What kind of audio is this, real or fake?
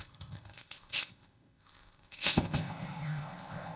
fake